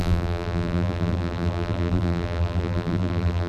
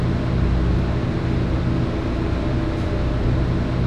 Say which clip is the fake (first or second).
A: first